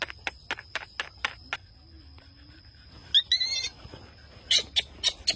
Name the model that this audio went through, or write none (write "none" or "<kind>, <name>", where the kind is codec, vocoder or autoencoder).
none